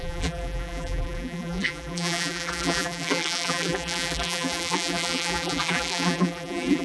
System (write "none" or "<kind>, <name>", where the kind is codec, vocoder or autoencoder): vocoder, BigVGAN v2